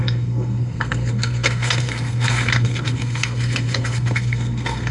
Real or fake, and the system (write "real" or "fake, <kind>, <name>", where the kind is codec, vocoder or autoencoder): fake, codec, SNAC